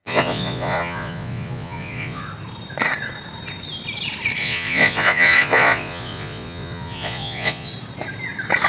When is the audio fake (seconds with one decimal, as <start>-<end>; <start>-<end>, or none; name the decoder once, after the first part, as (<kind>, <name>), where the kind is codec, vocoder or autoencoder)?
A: 0.0-2.2 (vocoder, Vocos); 4.4-7.7